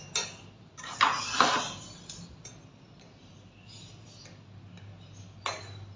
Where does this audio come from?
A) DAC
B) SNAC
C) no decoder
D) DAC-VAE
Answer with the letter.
C